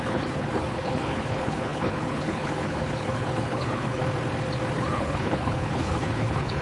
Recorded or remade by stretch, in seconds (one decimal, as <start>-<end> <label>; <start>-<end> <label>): 0.0-4.0 remade; 4.0-4.9 recorded; 4.9-6.6 remade